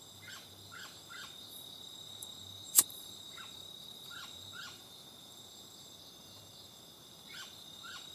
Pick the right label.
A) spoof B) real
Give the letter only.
A